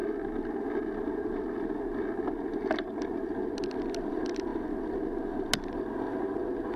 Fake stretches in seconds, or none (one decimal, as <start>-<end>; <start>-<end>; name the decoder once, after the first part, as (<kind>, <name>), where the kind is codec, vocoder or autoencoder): none